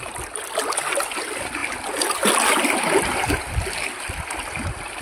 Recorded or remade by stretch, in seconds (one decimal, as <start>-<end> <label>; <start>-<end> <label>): 0.0-1.6 recorded; 1.6-3.5 remade; 3.5-5.0 recorded